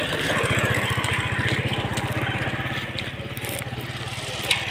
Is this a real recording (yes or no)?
yes